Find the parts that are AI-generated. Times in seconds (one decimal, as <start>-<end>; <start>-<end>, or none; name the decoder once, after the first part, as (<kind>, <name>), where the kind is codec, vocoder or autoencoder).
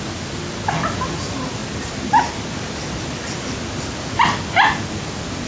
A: none